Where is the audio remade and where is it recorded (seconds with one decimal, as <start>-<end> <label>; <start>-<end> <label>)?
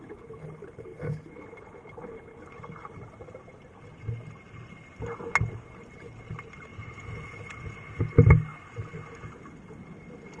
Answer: 0.0-6.7 recorded; 6.7-8.0 remade; 8.0-10.4 recorded